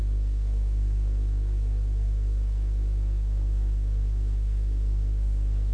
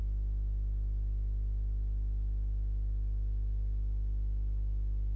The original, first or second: second